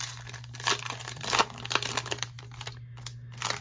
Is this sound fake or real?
real